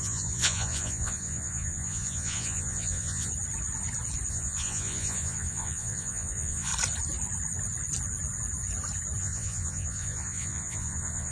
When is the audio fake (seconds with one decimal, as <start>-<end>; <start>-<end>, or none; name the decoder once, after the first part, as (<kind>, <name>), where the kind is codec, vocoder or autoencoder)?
0.0-3.3 (vocoder, Vocos); 4.3-6.7; 9.2-11.3